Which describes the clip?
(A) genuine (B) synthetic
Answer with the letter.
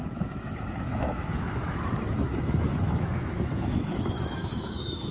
B